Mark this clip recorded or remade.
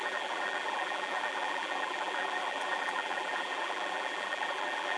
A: remade